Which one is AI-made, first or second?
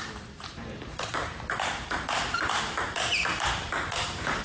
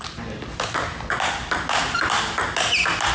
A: first